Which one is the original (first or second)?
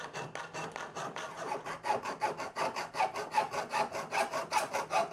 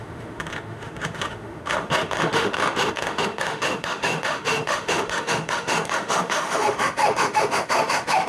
first